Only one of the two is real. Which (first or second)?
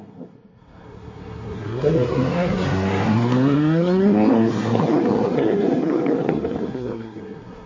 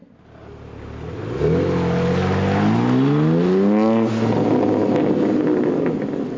second